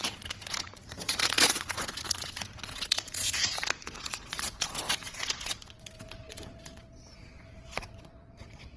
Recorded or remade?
remade